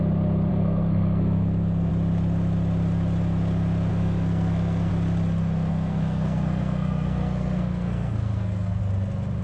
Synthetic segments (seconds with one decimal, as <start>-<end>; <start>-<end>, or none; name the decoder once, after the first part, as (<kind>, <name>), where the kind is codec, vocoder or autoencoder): 0.5-1.9 (codec, SNAC); 3.9-4.9; 5.7-8.8